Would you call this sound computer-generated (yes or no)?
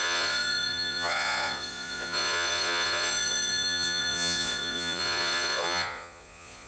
yes